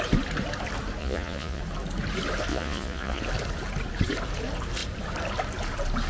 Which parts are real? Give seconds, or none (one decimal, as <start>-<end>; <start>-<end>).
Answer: 0.0-1.0; 1.6-2.5; 3.2-6.1